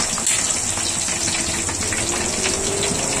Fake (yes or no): no